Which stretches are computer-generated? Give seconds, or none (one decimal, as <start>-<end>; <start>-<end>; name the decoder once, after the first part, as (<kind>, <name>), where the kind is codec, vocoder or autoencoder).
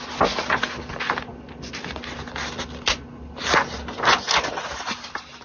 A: none